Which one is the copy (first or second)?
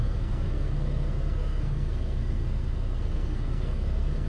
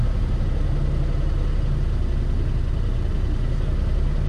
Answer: first